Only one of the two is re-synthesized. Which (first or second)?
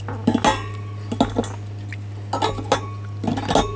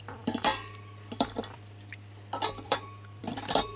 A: second